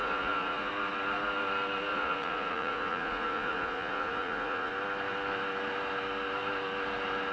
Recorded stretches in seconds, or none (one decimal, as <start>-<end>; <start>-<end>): 0.7-1.9; 4.7-7.3